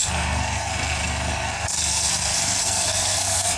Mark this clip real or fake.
fake